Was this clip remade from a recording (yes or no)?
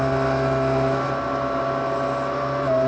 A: no